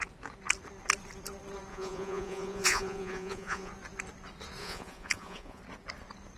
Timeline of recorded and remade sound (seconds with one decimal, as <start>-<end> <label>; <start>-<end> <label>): 0.0-1.7 recorded; 1.7-3.7 remade; 3.7-4.6 recorded; 4.6-5.6 remade; 5.6-6.4 recorded

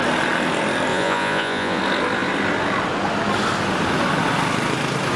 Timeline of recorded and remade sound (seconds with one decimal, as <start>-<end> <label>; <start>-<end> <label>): 0.0-0.9 recorded; 0.9-1.8 remade; 1.8-5.2 recorded

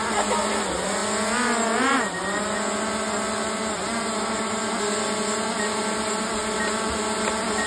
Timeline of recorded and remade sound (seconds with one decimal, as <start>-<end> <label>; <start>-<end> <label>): 0.0-7.7 recorded

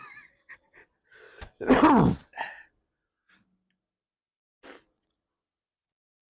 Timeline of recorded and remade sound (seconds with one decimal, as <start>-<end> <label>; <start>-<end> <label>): 0.0-1.1 remade; 1.1-4.9 recorded; 4.9-6.3 remade